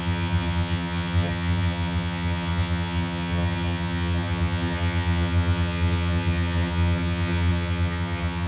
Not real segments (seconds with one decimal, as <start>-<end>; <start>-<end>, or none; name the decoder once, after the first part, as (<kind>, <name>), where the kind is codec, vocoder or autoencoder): 0.0-8.5 (vocoder, HiFi-GAN)